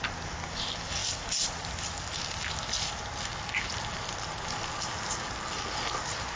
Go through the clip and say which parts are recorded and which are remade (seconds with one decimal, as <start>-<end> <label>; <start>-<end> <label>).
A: 0.0-6.4 recorded

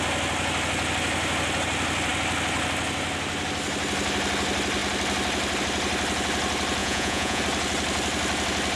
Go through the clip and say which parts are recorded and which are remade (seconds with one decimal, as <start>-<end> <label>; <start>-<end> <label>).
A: 0.0-6.8 recorded; 6.8-7.4 remade; 7.4-8.8 recorded

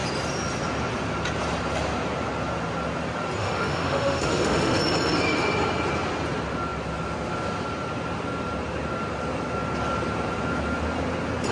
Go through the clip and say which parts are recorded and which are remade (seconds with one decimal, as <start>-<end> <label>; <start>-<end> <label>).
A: 0.0-3.4 recorded; 3.4-4.8 remade; 4.8-11.5 recorded

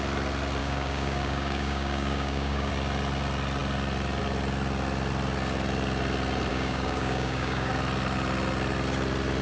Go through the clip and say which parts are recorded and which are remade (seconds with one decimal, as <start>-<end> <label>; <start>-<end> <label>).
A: 0.0-0.6 recorded; 0.6-2.7 remade; 2.7-6.5 recorded; 6.5-7.7 remade; 7.7-9.4 recorded

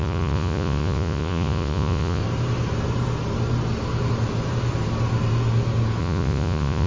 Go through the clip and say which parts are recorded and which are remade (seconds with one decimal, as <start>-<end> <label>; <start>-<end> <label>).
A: 0.0-2.2 remade; 2.2-6.0 recorded; 6.0-6.9 remade

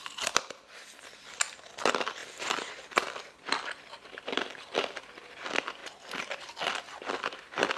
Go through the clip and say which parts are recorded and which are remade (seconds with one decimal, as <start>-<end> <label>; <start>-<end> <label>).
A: 0.0-7.8 remade

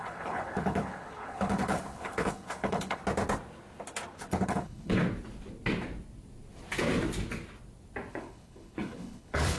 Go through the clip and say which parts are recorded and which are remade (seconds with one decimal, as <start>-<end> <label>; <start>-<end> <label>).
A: 0.0-3.0 remade; 3.0-4.3 recorded; 4.3-5.0 remade; 5.0-8.1 recorded; 8.1-9.6 remade